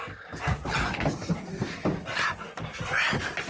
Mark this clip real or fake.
real